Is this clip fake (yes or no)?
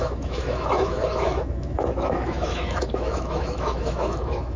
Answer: yes